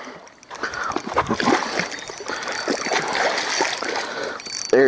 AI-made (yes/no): no